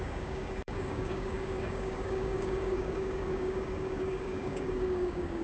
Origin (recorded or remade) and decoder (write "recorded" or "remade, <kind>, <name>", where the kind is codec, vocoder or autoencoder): remade, codec, DAC